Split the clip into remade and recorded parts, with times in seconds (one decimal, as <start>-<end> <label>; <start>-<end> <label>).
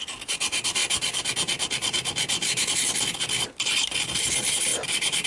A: 0.0-5.3 recorded